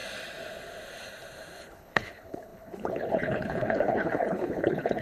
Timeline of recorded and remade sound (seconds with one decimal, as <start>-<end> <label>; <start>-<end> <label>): 0.0-1.6 recorded; 1.6-5.0 remade